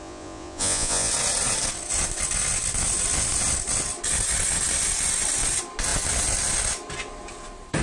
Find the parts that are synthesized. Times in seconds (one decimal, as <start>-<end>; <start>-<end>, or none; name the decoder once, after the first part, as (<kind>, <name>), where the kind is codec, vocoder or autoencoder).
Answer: 0.0-1.1 (vocoder, Vocos)